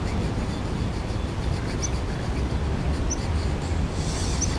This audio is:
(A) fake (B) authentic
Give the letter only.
B